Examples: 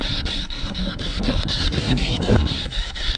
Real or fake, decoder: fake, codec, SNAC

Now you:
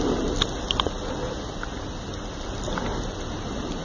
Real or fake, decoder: real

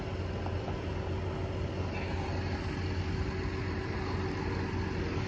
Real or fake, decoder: real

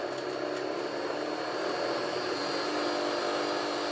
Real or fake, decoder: real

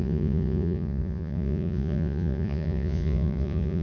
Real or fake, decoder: fake, vocoder, Vocos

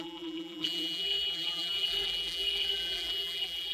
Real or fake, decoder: fake, vocoder, BigVGAN v2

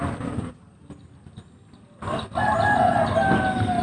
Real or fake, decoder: real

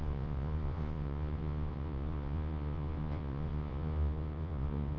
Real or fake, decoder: fake, vocoder, Vocos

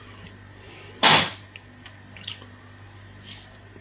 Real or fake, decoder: real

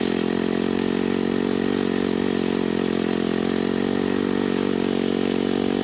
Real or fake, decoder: real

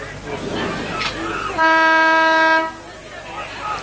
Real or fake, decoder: real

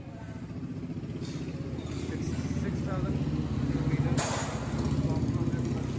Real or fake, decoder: real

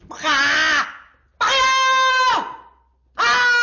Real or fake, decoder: real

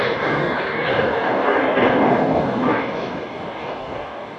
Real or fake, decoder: fake, codec, DAC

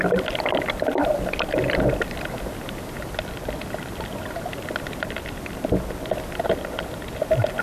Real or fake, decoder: real